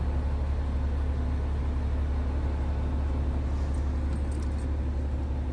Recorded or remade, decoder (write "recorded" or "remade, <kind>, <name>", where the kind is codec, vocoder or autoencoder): recorded